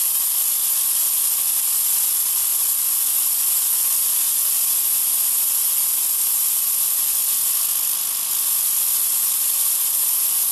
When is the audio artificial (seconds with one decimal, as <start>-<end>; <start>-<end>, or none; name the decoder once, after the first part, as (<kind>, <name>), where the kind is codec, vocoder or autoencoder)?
2.5-5.7 (vocoder, BigVGAN v2); 7.4-9.6